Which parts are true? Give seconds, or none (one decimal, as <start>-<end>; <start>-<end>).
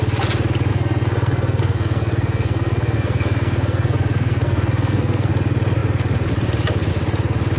0.0-0.7; 5.3-7.6